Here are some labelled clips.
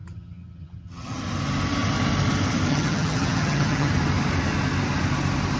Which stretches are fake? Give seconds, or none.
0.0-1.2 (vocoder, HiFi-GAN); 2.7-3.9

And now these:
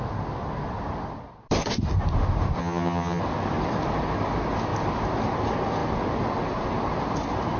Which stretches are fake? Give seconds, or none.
2.6-3.2 (vocoder, HiFi-GAN)

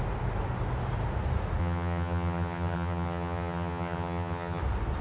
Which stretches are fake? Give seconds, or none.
1.6-4.6 (vocoder, HiFi-GAN)

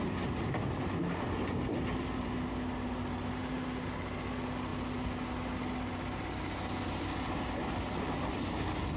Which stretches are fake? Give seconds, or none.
none

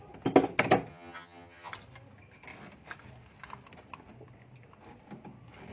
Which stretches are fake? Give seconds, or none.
0.9-1.7 (vocoder, HiFi-GAN)

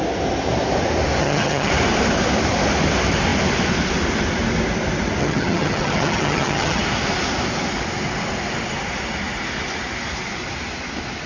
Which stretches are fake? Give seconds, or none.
1.2-1.7 (vocoder, HiFi-GAN); 5.2-6.8